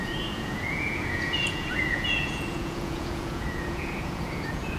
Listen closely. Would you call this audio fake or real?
fake